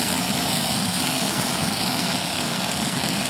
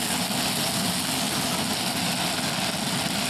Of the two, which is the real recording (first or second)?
second